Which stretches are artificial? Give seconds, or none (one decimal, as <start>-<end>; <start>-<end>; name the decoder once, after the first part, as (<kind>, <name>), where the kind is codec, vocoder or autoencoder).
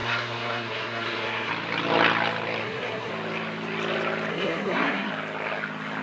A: 0.0-1.5 (codec, SNAC); 2.6-3.1; 4.3-5.1